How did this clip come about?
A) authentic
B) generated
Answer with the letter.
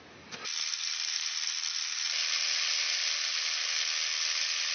A